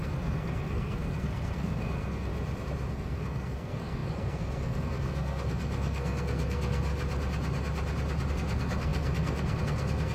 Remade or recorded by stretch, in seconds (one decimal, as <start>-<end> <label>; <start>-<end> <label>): 0.0-2.3 remade; 2.3-2.9 recorded; 2.9-6.9 remade; 6.9-8.3 recorded; 8.3-10.1 remade